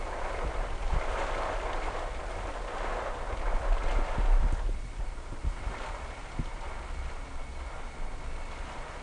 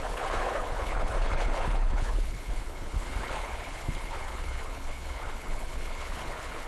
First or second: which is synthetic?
second